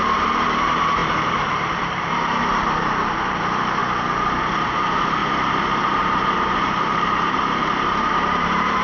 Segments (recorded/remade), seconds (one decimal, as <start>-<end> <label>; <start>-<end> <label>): 0.0-3.8 remade; 3.8-4.4 recorded; 4.4-5.2 remade; 5.2-5.9 recorded; 5.9-8.8 remade